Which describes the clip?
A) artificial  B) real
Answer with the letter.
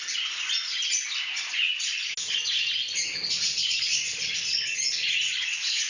B